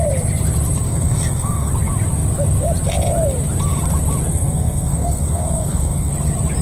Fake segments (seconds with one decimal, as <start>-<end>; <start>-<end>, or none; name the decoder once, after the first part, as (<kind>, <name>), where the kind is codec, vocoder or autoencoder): 0.9-1.7 (codec, SNAC); 4.3-6.1